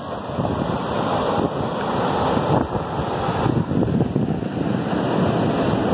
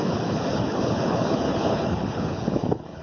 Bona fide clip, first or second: first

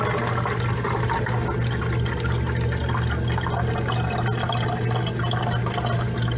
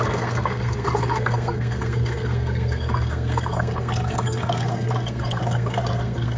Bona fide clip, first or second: first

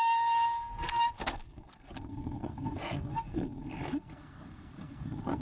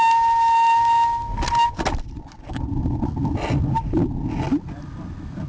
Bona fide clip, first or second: second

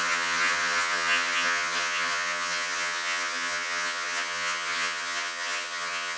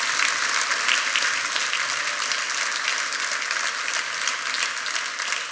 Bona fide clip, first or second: second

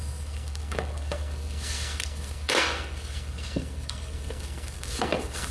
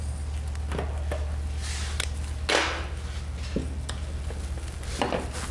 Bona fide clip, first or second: second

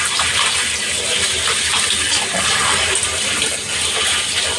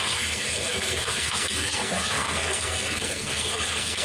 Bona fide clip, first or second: first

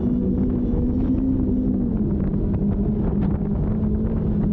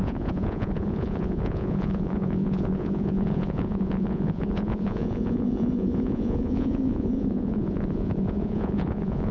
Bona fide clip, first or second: first